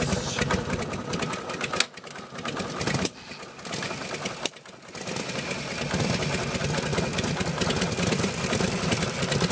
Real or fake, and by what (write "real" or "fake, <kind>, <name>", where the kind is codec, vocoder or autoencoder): real